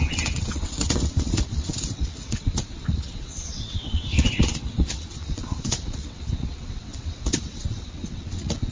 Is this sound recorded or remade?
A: remade